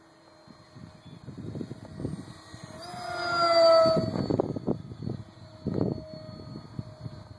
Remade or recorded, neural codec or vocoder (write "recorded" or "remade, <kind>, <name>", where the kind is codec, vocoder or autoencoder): recorded